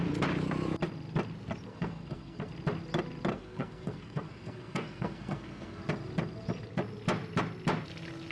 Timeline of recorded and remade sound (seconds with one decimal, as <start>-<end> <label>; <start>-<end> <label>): 0.0-1.7 recorded; 1.7-2.5 remade; 2.5-3.3 recorded; 3.3-5.8 remade; 5.8-8.3 recorded

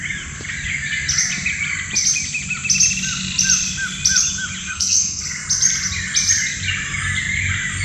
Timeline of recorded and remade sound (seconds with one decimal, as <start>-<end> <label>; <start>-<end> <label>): 0.0-4.6 recorded; 4.6-5.2 remade; 5.2-7.8 recorded

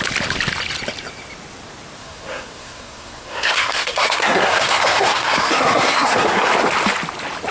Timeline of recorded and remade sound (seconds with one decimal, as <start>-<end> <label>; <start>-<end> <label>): 0.0-2.0 recorded; 2.0-6.5 remade; 6.5-7.5 recorded

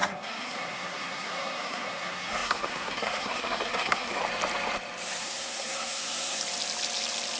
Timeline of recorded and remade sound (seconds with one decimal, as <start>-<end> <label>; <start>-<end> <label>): 0.0-4.2 remade; 4.2-5.2 recorded; 5.2-6.4 remade; 6.4-7.4 recorded

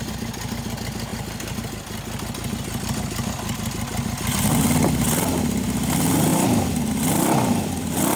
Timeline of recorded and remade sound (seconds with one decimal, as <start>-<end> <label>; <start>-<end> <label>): 0.0-8.2 recorded

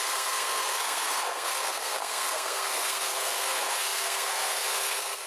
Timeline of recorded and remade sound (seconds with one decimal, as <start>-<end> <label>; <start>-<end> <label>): 0.0-5.3 remade

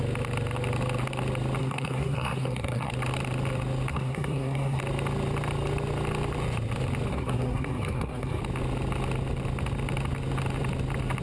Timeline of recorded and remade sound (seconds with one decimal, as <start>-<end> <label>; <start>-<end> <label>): 0.0-1.6 recorded; 1.6-2.9 remade; 2.9-3.9 recorded; 3.9-4.8 remade; 4.8-7.1 recorded; 7.1-8.4 remade; 8.4-11.2 recorded

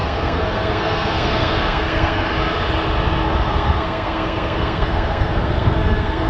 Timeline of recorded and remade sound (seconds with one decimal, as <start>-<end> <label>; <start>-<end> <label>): 0.0-2.3 remade; 2.3-3.5 recorded; 3.5-6.3 remade